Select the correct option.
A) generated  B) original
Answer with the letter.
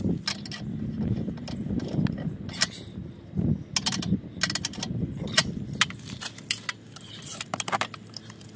B